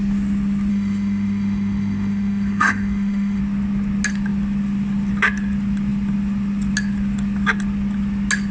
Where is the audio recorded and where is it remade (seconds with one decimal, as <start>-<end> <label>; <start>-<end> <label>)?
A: 0.0-0.7 recorded; 0.7-3.4 remade; 3.4-8.5 recorded